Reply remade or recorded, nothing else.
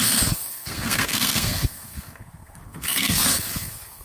remade